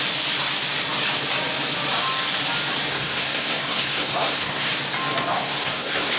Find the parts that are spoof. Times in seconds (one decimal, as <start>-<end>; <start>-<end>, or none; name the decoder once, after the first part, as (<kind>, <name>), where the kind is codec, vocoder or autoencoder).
2.9-4.7 (codec, SNAC); 5.3-6.2